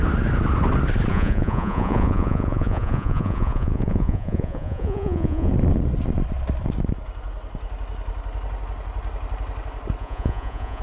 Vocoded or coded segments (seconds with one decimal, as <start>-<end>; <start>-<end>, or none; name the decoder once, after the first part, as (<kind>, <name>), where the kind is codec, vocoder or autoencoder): 1.1-5.5 (vocoder, Vocos); 10.0-10.8